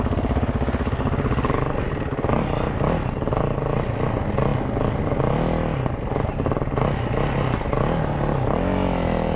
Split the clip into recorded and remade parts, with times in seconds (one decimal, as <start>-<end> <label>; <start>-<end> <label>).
0.0-9.4 recorded